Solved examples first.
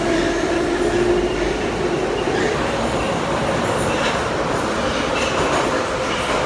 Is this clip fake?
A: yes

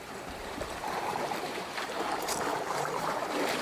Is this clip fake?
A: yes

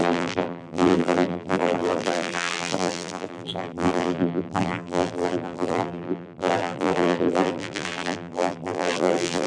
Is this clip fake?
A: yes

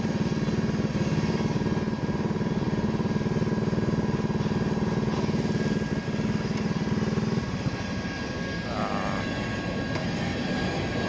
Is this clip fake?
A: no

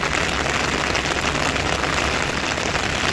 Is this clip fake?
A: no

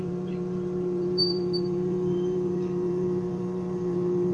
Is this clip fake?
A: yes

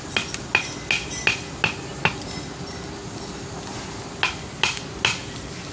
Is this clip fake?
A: no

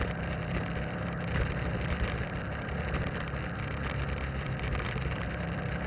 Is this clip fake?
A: yes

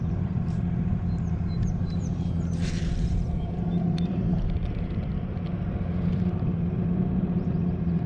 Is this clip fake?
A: yes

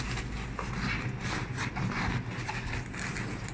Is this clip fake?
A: no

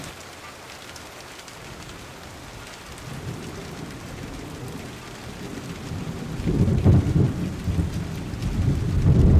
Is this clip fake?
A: no